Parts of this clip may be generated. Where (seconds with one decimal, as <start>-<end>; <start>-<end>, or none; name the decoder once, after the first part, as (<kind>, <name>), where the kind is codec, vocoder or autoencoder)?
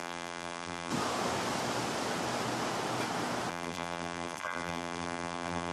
0.0-0.9 (vocoder, BigVGAN v2); 3.5-5.7